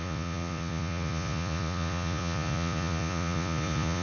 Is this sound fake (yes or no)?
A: yes